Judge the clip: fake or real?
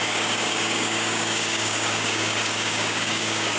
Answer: fake